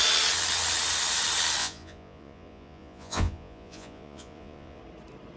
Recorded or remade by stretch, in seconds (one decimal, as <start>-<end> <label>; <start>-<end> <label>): 0.0-1.6 recorded; 1.6-4.8 remade; 4.8-5.4 recorded